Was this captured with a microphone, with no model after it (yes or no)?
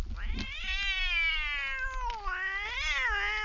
yes